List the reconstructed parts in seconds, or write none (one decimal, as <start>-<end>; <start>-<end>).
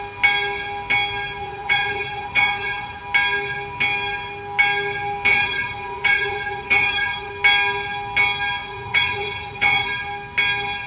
1.4-3.0; 5.3-7.3; 8.6-9.9